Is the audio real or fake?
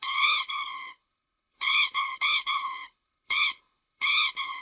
fake